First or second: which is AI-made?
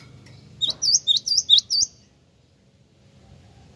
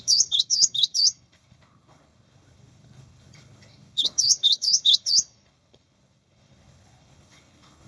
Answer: second